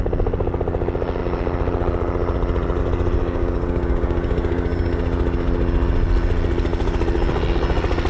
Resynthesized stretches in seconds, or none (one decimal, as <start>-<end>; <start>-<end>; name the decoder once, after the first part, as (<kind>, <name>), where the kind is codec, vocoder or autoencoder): 3.2-5.0 (codec, DAC)